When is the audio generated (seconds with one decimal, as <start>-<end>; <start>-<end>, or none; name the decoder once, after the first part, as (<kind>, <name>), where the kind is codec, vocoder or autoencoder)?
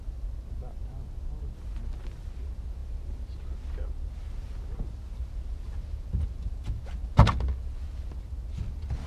none